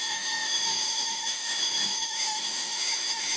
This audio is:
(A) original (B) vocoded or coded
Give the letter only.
B